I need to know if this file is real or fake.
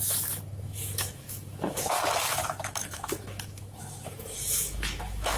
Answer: fake